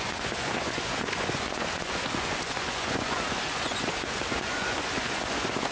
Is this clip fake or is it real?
fake